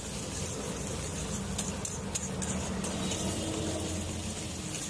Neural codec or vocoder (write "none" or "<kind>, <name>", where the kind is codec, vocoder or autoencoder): none